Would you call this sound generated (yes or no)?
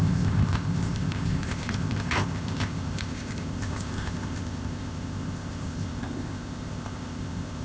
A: yes